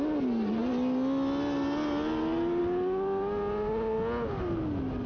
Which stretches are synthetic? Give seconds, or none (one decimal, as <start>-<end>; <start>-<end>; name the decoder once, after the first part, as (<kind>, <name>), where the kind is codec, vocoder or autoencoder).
none